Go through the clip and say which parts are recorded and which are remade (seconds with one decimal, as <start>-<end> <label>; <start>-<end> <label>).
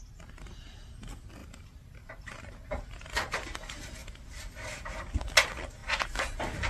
0.0-1.4 recorded; 1.4-2.8 remade; 2.8-6.7 recorded